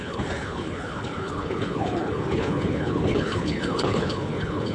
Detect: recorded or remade remade